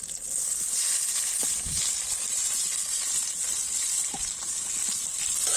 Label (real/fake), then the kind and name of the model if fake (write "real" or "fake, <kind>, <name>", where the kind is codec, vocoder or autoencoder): real